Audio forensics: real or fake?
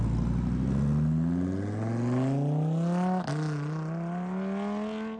real